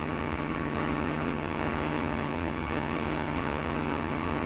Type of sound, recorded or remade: remade